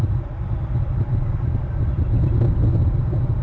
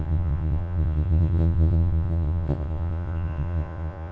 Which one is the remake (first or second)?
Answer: second